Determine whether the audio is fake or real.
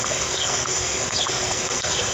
fake